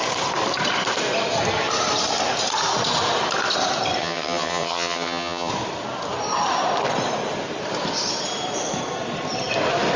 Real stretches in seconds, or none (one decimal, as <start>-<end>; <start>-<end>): 0.0-4.0; 5.5-10.0